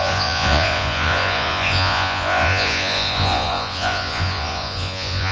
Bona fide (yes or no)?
no